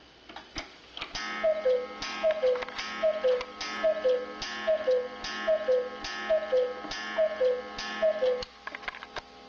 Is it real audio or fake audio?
real